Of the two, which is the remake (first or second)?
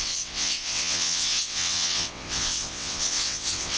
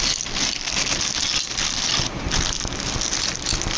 first